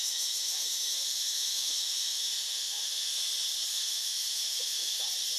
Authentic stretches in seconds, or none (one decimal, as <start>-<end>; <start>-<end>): 3.2-3.7; 5.0-5.4